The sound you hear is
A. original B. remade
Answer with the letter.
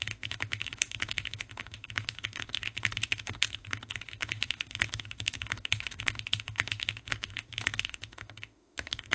B